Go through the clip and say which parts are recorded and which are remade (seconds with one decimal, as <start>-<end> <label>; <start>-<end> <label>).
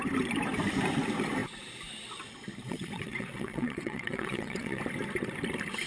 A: 0.0-2.6 recorded; 2.6-4.8 remade; 4.8-5.9 recorded